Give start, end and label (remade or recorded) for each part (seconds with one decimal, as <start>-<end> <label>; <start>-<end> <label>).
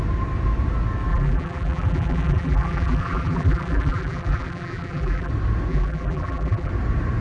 0.0-1.1 recorded; 1.1-5.3 remade; 5.3-5.7 recorded; 5.7-6.7 remade; 6.7-7.2 recorded